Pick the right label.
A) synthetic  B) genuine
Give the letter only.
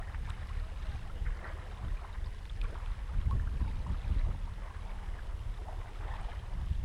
B